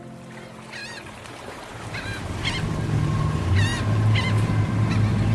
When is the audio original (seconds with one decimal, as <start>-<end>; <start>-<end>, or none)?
0.0-0.8; 2.2-5.3